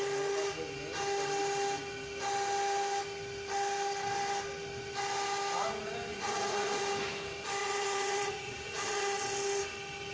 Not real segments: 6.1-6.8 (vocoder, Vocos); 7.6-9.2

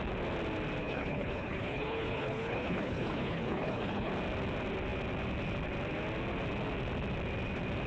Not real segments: 0.8-4.1 (codec, HILCodec)

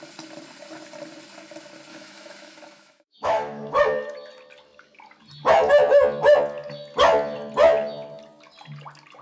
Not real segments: 1.9-3.8 (autoencoder, DAC-VAE)

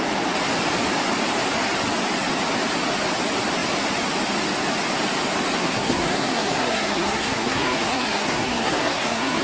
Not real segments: 5.6-9.4 (codec, SNAC)